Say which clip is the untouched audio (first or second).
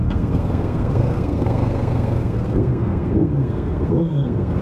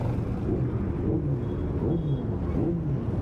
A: second